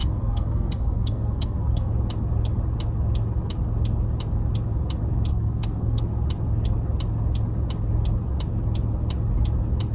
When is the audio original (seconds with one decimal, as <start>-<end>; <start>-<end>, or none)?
1.9-5.3; 6.0-9.9